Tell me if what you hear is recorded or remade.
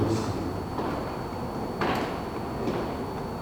recorded